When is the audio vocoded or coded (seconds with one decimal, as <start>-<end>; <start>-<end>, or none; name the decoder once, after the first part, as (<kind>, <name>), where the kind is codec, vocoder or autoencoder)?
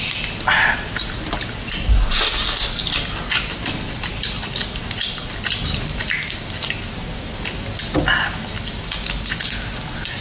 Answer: none